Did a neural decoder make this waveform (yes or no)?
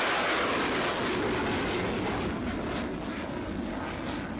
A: no